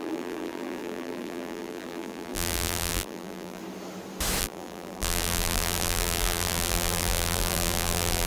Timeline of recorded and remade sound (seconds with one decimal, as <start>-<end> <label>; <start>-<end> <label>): 0.0-3.6 remade; 3.6-4.4 recorded; 4.4-8.3 remade